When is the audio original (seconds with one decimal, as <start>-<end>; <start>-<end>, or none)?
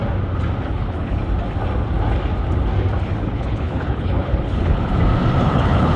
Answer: 0.0-0.7; 1.2-3.0; 4.9-5.4